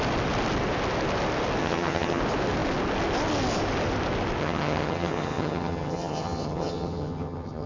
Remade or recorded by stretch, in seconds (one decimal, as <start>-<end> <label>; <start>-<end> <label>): 0.0-1.6 recorded; 1.6-2.2 remade; 2.2-4.4 recorded; 4.4-7.7 remade